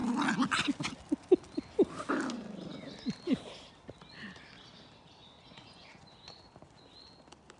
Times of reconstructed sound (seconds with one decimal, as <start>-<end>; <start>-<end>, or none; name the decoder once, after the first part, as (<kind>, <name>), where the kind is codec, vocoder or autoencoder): 5.2-6.4 (vocoder, Vocos)